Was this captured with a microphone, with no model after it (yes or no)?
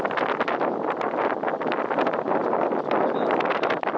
yes